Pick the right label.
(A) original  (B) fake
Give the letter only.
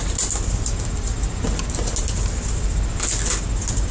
A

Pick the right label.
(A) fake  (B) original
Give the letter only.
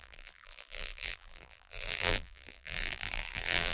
A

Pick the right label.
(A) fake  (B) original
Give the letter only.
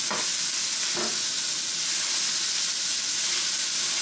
B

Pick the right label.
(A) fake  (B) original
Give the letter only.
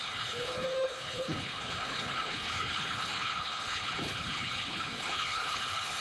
A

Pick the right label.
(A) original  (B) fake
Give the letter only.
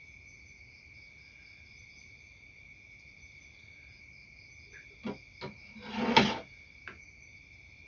A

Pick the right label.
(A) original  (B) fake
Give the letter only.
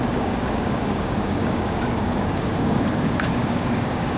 B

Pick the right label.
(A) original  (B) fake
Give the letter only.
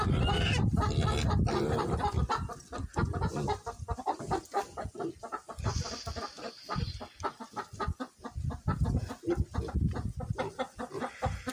A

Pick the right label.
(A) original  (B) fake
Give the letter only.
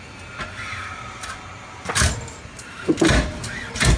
A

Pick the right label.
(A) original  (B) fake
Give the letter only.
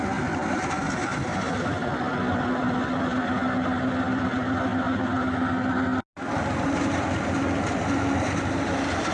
A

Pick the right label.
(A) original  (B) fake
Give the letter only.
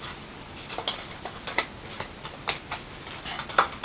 A